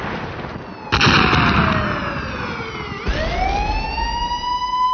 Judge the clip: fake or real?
real